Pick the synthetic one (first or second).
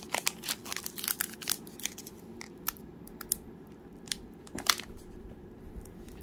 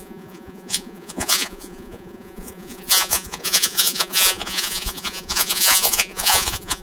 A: second